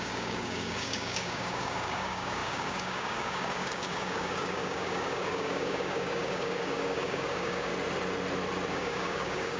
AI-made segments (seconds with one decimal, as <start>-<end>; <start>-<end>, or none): 0.0-7.7; 8.7-9.6